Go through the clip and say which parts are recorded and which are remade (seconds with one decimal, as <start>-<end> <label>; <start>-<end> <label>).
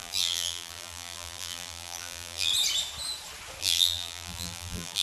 0.0-2.5 remade; 2.5-3.6 recorded; 3.6-5.0 remade